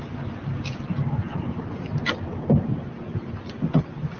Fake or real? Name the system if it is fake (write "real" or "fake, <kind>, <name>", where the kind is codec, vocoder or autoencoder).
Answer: real